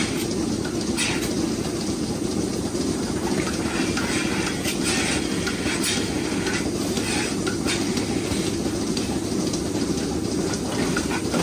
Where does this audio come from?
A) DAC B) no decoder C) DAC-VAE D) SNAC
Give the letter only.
B